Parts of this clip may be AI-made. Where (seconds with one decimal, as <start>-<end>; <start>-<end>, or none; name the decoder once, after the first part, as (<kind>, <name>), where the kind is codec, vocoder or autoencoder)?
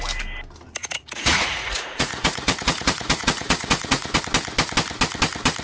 0.8-4.2 (vocoder, Vocos)